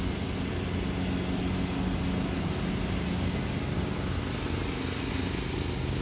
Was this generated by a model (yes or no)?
no